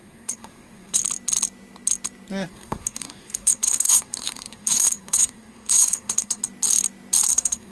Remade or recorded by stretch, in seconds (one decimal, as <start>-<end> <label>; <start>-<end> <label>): 0.0-1.0 remade; 1.0-2.5 recorded; 2.5-6.4 remade; 6.4-7.3 recorded; 7.3-7.7 remade